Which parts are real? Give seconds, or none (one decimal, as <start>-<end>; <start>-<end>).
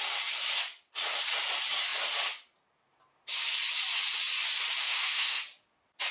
0.0-4.8; 5.4-6.1